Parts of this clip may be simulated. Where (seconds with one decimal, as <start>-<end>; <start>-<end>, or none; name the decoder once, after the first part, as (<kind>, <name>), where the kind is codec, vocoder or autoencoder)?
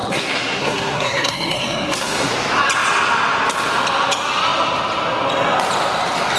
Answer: 0.0-2.3 (codec, SNAC)